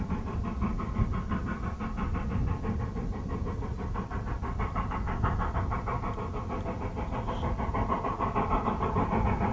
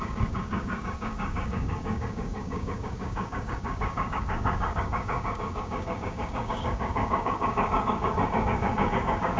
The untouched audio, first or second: first